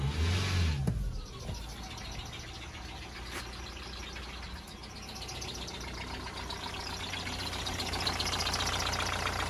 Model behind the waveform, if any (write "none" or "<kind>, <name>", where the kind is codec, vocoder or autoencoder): none